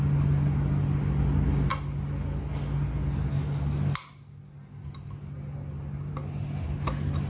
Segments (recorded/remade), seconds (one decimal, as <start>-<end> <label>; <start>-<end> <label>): 0.0-7.3 recorded